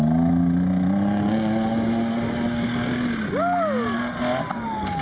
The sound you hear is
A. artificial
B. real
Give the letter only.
B